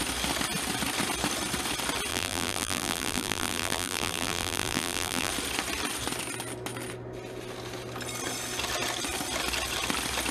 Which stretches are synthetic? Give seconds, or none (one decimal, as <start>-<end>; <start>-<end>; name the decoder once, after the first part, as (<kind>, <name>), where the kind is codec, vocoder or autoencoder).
2.1-5.3 (vocoder, BigVGAN v2)